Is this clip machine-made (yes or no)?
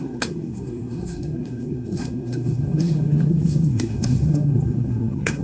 yes